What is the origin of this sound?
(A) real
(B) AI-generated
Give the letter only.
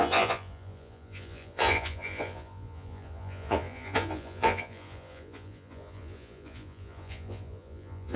B